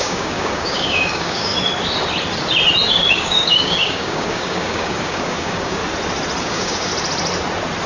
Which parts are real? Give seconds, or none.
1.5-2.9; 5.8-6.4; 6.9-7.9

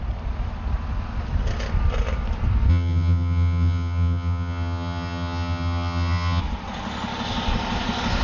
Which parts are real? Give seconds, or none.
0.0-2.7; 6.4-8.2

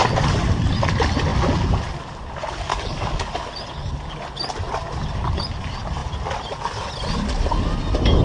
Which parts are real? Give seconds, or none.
0.0-2.7; 3.5-8.2